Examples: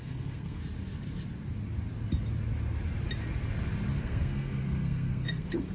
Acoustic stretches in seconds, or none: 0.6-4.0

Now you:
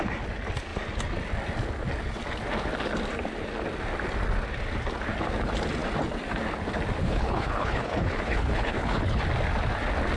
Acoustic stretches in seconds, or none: 0.0-7.0; 9.2-10.2

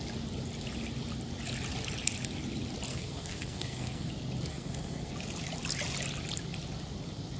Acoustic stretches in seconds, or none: 0.0-2.9; 4.1-4.5; 5.1-7.4

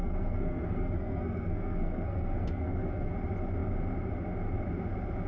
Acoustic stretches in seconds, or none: 3.1-5.3